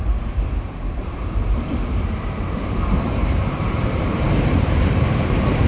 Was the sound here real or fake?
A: fake